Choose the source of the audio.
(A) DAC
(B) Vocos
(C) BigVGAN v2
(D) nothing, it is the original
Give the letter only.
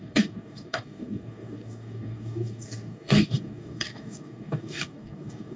A